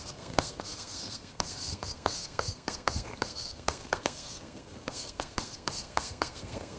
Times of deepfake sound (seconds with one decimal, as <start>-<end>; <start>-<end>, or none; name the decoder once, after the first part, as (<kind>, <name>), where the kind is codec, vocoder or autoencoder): 0.0-6.8 (codec, SNAC)

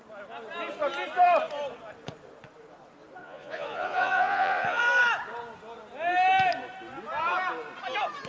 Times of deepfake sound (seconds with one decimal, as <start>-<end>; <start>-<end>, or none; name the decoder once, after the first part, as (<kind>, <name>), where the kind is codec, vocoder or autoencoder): 3.2-4.8 (vocoder, Vocos)

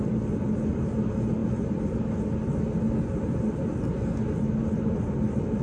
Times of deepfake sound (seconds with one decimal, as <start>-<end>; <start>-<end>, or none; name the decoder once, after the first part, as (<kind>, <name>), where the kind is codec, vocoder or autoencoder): none

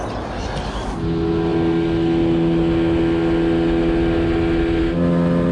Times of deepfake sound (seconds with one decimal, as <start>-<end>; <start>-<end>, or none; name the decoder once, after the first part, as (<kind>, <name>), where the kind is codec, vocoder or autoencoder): none

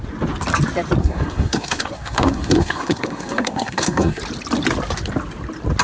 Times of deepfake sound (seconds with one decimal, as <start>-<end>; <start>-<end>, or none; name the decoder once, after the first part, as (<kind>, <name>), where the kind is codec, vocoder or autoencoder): 1.0-4.2 (codec, SNAC)

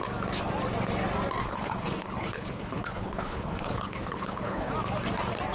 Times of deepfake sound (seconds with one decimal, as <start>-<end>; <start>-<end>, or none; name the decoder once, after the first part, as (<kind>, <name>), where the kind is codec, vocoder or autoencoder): 1.4-4.7 (codec, HILCodec)